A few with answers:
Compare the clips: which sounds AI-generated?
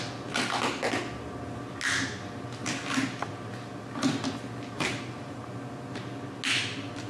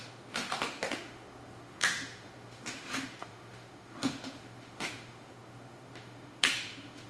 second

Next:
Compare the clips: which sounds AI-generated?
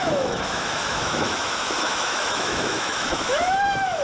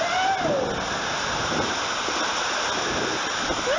first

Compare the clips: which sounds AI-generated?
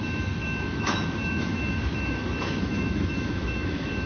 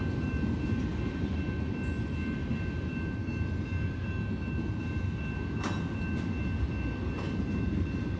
first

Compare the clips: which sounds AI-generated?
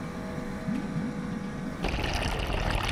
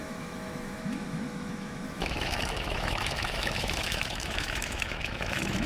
second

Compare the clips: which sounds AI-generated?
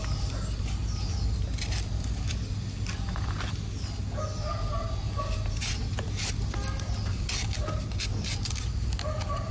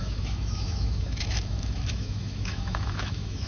second